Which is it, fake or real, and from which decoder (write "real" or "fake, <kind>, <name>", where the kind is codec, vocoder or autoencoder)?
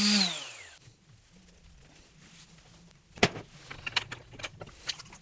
real